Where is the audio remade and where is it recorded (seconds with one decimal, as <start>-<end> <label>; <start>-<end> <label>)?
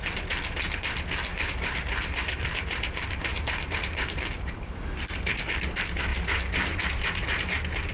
0.0-1.3 recorded; 1.3-4.8 remade; 4.8-6.1 recorded; 6.1-7.1 remade; 7.1-7.9 recorded